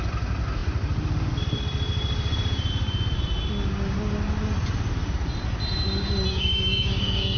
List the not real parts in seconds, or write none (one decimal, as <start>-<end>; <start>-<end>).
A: 6.3-7.4